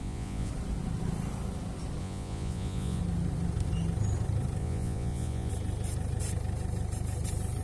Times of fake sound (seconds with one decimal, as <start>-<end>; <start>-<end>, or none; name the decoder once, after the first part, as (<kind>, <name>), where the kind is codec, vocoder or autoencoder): 0.0-0.5 (vocoder, Vocos); 2.0-3.0; 4.6-5.5